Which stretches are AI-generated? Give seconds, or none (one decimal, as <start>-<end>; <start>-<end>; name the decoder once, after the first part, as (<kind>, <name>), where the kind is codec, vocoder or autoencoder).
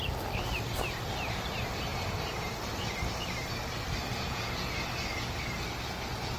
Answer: 4.1-4.7 (vocoder, Vocos)